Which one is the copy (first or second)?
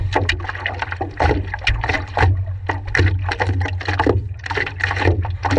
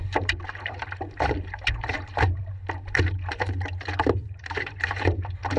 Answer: second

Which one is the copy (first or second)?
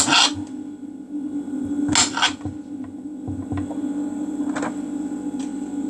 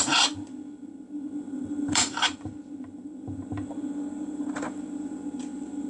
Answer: second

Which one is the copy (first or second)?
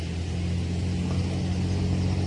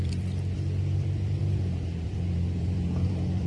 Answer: second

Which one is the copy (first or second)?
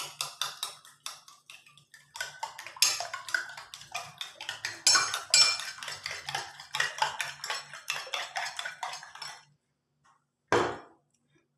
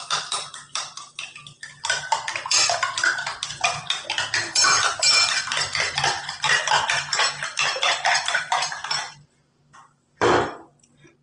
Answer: second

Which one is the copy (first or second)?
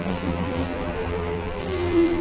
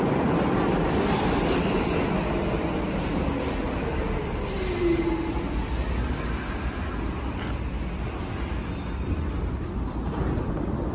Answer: first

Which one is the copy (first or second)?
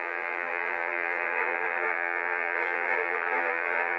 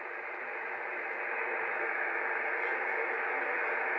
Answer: first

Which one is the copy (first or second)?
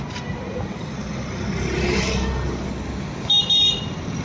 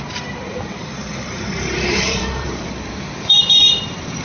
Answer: second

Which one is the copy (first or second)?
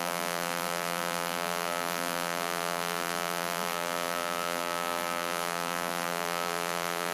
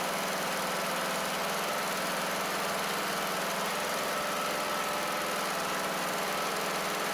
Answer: first